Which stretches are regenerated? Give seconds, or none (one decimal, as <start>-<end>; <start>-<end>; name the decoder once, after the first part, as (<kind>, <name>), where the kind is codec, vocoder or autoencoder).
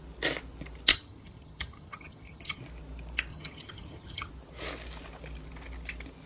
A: 0.9-2.6 (vocoder, HiFi-GAN); 3.3-4.3